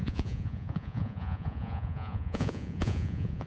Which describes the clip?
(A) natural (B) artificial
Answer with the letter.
B